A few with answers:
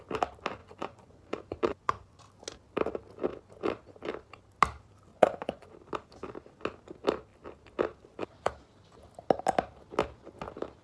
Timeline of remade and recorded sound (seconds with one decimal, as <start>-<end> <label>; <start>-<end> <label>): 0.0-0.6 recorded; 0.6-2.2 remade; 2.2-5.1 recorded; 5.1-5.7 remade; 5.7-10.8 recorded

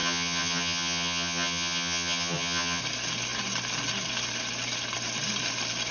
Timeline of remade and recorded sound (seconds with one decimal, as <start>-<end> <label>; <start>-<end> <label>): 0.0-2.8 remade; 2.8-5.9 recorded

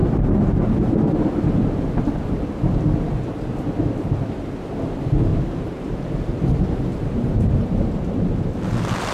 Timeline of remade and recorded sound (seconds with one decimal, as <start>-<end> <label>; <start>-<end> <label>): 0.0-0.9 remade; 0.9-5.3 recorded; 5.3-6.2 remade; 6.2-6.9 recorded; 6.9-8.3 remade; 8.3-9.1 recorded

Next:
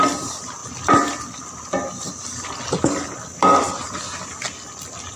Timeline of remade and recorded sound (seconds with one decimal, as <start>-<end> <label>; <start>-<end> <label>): 0.0-5.2 recorded

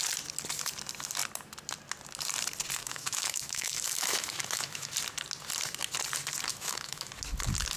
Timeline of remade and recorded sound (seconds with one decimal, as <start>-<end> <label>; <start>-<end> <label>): 0.0-2.8 recorded; 2.8-4.9 remade; 4.9-6.5 recorded; 6.5-7.1 remade; 7.1-7.8 recorded

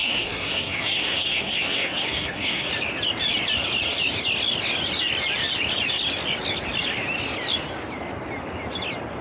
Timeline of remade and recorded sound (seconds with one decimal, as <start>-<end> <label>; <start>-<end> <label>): 0.0-2.7 remade; 2.7-9.2 recorded

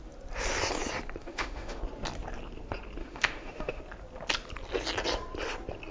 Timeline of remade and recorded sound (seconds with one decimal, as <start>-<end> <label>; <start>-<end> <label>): 0.0-1.2 recorded; 1.2-1.8 remade; 1.8-3.0 recorded; 3.0-3.8 remade; 3.8-5.9 recorded

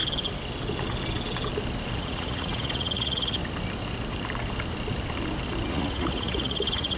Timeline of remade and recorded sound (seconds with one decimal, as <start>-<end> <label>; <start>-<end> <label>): 0.0-2.0 recorded; 2.0-3.4 remade; 3.4-5.7 recorded; 5.7-7.0 remade